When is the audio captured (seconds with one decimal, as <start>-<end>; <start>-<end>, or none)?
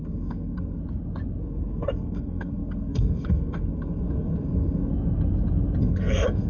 0.8-1.4; 4.9-5.8